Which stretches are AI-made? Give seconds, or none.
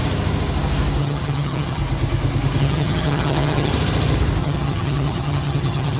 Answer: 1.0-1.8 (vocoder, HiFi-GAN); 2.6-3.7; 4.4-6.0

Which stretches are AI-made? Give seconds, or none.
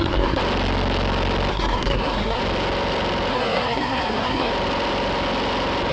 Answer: 0.0-0.4 (codec, SNAC); 1.5-2.4; 3.3-4.5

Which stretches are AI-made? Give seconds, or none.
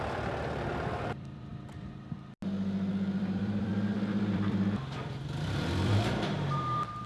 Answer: 0.0-1.5 (vocoder, BigVGAN v2); 2.9-7.1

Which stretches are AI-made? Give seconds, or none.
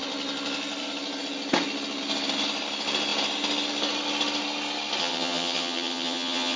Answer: 5.0-6.6 (vocoder, HiFi-GAN)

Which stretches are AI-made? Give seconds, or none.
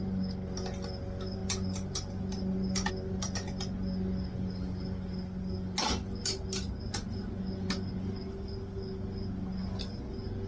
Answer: none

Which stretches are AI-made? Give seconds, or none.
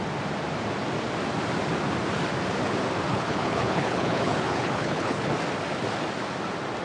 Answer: 3.1-5.3 (codec, HILCodec)